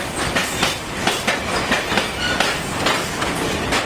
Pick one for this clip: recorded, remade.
recorded